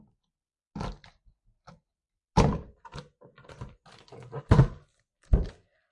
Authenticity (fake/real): real